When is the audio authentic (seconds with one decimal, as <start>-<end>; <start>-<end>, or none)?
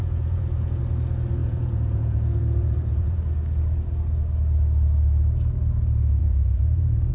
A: 0.8-1.4; 3.2-6.2